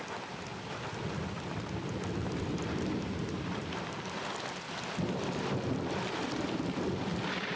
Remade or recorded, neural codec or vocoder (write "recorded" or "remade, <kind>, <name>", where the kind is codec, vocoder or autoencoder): remade, vocoder, BigVGAN v2